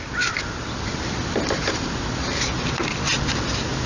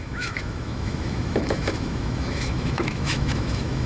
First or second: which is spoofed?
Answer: second